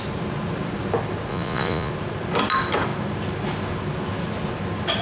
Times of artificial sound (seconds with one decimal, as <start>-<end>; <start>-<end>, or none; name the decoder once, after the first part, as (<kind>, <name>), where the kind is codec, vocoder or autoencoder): 1.3-1.9 (vocoder, Vocos)